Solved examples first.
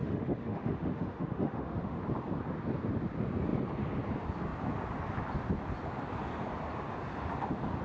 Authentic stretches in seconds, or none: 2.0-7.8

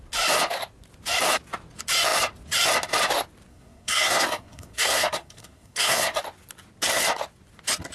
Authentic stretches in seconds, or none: 0.0-3.5; 6.2-7.9

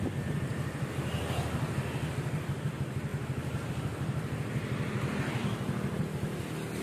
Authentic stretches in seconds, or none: 0.0-6.8

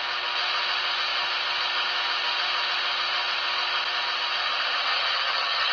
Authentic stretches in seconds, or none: 0.0-4.9

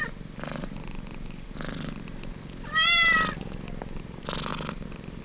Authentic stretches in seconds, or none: 0.0-5.2

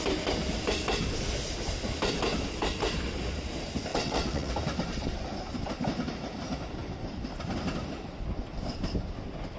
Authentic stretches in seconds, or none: 0.0-3.9; 4.5-9.6

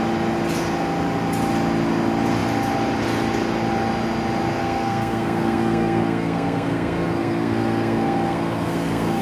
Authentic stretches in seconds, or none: 0.0-4.6